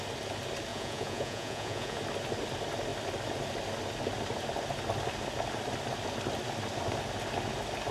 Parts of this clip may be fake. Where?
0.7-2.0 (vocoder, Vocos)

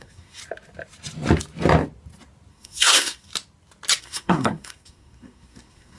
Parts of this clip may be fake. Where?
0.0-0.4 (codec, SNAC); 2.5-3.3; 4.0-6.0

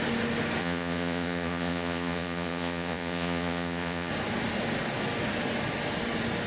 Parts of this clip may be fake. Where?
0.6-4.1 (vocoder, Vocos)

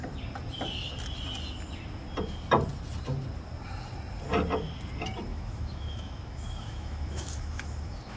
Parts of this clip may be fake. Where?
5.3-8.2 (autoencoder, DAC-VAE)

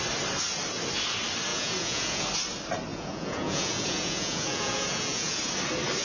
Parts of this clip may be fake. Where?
1.5-2.2 (vocoder, Vocos); 2.9-5.4

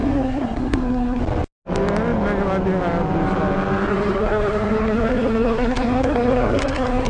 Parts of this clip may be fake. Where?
0.0-1.2 (codec, SNAC); 3.9-7.1

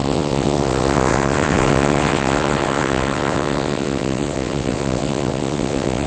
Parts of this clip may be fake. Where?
0.0-6.1 (vocoder, WaveNeXt)